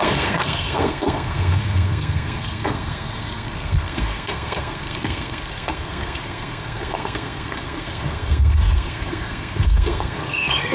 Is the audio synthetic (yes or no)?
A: yes